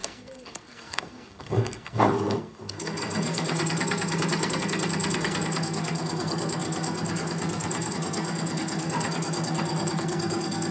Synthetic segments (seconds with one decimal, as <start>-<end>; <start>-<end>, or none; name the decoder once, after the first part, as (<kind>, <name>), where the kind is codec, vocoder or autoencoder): 0.0-10.7 (codec, SNAC)

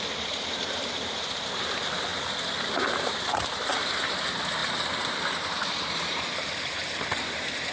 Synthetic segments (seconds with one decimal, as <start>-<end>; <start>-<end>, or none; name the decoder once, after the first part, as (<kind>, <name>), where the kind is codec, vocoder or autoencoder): 0.0-2.1 (vocoder, BigVGAN v2); 2.7-7.7